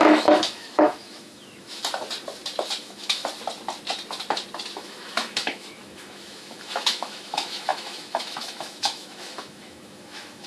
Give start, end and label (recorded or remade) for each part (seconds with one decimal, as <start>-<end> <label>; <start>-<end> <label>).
0.0-1.8 remade; 1.8-2.8 recorded; 2.8-3.2 remade; 3.2-4.7 recorded; 4.7-10.5 remade